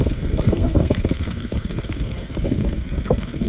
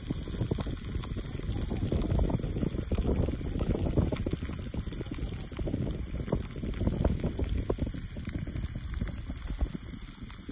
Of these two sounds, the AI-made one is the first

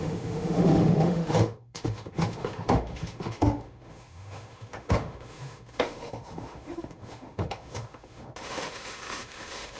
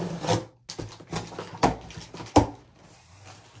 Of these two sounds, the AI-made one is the first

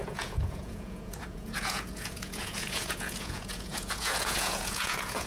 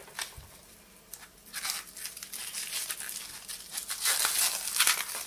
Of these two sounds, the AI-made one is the first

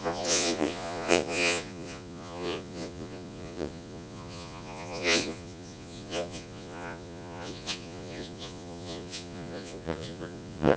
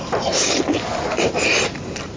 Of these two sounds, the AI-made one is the first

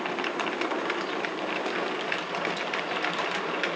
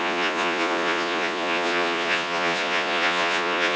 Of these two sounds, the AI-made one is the second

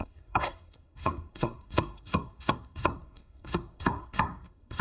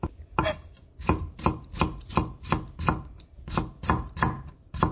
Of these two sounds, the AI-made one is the first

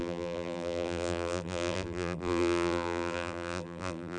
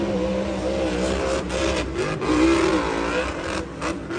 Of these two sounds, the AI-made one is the first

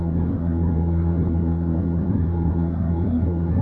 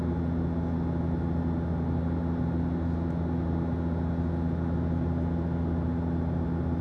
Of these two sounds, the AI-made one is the first